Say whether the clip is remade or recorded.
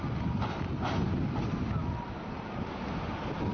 recorded